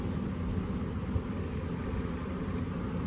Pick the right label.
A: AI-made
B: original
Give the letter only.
B